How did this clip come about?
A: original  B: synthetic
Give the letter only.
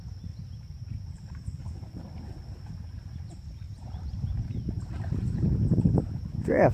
B